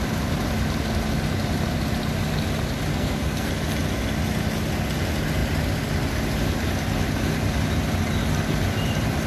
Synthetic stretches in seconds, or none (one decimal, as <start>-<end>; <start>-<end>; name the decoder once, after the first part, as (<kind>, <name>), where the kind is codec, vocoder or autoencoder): 2.9-3.5 (codec, SNAC)